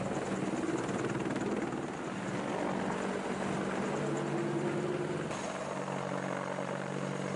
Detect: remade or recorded recorded